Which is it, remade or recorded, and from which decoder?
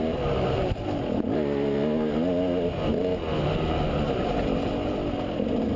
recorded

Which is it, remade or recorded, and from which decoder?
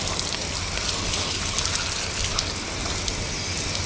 recorded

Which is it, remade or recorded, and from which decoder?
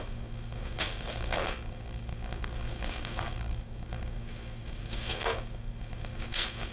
remade, codec, SNAC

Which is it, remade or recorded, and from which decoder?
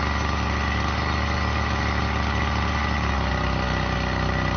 recorded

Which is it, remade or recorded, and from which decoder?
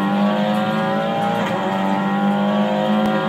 recorded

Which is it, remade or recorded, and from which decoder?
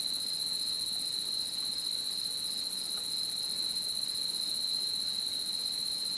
recorded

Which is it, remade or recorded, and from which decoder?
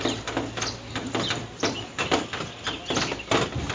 recorded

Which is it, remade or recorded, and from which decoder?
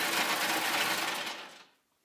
recorded